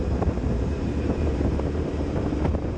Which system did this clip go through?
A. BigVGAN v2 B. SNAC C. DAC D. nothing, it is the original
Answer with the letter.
A